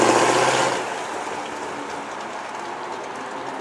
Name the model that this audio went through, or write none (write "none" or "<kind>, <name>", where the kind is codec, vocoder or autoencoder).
none